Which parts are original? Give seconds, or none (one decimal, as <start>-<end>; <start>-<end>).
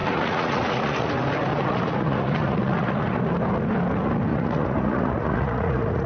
1.1-1.5; 3.3-4.3